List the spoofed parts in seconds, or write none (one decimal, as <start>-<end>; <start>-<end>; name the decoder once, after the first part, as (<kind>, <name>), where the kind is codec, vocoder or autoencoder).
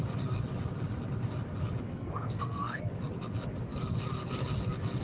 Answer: 1.9-2.8 (codec, SNAC)